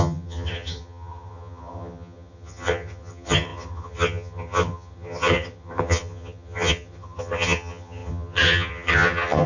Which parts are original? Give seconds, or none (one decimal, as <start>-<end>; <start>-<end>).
none